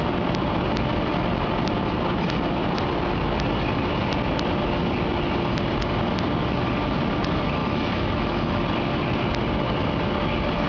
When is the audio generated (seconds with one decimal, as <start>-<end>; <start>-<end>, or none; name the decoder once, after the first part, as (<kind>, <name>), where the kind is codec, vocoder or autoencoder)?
7.6-8.6 (autoencoder, DAC-VAE)